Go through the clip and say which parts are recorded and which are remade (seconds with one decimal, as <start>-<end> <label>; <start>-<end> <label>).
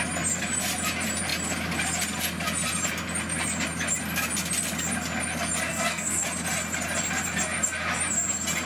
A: 0.0-5.7 recorded; 5.7-6.2 remade; 6.2-8.7 recorded